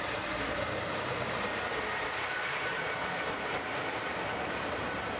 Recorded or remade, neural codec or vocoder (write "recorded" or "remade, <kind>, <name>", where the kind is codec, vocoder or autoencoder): remade, vocoder, BigVGAN v2